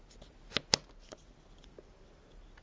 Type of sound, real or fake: real